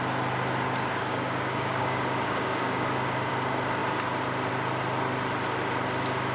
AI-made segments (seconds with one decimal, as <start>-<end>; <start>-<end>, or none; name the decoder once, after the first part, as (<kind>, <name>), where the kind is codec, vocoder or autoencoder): 0.9-3.3 (codec, DAC)